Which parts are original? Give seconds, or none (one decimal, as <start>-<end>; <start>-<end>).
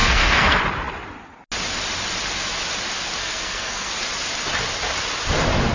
0.6-3.2; 3.9-5.7